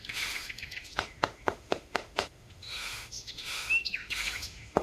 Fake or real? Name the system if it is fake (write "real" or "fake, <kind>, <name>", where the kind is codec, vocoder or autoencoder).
fake, autoencoder, DAC-VAE